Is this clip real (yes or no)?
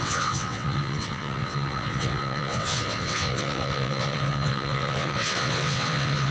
no